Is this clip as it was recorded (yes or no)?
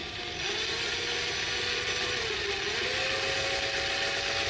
yes